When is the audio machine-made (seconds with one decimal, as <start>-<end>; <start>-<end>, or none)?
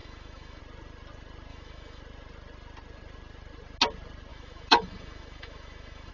0.0-0.6; 1.5-2.0; 4.3-6.1